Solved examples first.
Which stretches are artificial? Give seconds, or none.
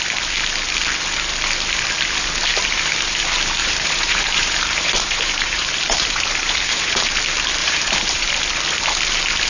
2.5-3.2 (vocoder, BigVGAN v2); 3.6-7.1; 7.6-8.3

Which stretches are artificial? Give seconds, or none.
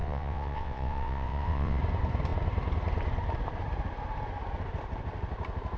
0.0-1.8 (vocoder, WaveNeXt)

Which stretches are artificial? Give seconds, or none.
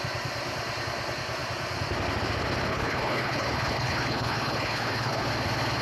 2.7-5.3 (codec, HILCodec)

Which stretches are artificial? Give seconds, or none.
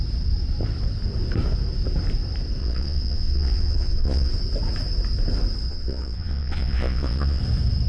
2.6-4.3 (vocoder, Vocos); 5.7-7.4